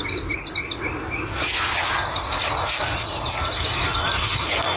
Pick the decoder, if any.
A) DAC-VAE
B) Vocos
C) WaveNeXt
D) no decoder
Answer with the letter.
D